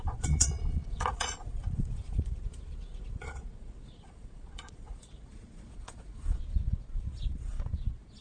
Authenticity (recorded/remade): remade